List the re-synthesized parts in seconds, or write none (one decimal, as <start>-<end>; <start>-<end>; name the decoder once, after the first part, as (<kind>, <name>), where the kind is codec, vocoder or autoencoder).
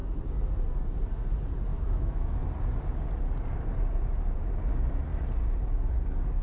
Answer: 1.7-2.4 (autoencoder, DAC-VAE)